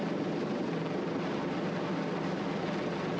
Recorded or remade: recorded